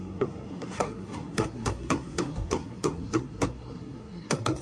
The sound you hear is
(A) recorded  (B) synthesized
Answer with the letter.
B